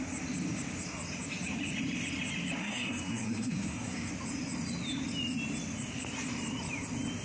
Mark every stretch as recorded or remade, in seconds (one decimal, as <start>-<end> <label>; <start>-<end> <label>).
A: 0.0-2.6 recorded; 2.6-4.1 remade; 4.1-7.2 recorded